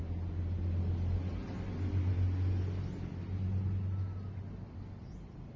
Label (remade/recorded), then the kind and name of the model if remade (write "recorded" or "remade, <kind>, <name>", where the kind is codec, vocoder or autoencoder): recorded